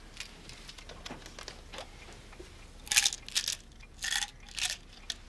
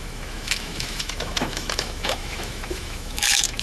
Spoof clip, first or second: second